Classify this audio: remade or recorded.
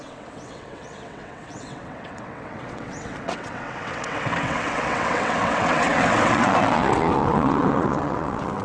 remade